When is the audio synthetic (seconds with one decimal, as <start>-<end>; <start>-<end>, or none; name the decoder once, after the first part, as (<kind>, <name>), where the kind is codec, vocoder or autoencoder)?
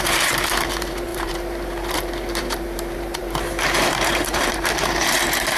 0.0-5.6 (vocoder, BigVGAN v2)